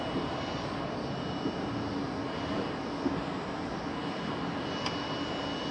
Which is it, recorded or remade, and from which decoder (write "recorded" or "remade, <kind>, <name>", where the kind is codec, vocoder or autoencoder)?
recorded